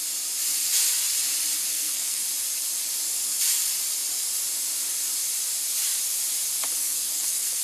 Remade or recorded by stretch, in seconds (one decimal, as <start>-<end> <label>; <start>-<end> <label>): 0.0-1.7 recorded; 1.7-2.2 remade; 2.2-6.8 recorded; 6.8-7.6 remade

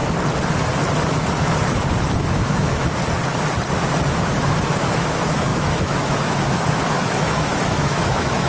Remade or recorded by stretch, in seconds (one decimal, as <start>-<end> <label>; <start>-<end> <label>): 0.0-2.2 recorded; 2.2-3.0 remade; 3.0-4.1 recorded; 4.1-8.5 remade

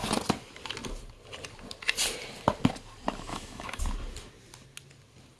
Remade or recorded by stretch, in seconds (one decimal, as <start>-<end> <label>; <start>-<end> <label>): 0.0-3.3 recorded; 3.3-3.8 remade; 3.8-5.4 recorded

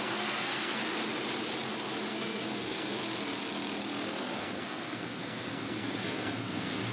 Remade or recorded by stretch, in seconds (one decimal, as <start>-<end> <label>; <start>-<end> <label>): 0.0-0.8 remade; 0.8-2.1 recorded; 2.1-3.0 remade; 3.0-4.2 recorded; 4.2-6.9 remade

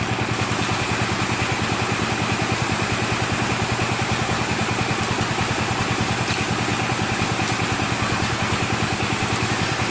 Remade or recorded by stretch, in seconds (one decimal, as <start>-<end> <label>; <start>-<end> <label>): 0.0-9.9 recorded

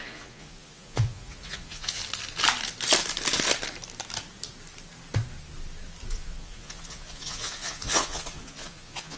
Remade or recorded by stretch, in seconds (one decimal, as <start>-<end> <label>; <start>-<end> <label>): 0.0-2.0 remade; 2.0-6.1 recorded; 6.1-9.2 remade

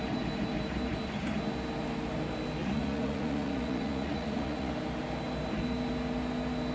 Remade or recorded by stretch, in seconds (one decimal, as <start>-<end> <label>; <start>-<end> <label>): 0.0-2.6 recorded; 2.6-4.7 remade; 4.7-6.7 recorded

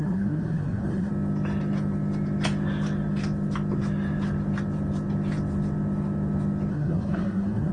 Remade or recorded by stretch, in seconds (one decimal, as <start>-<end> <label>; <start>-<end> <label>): 0.0-1.1 remade; 1.1-6.7 recorded; 6.7-7.7 remade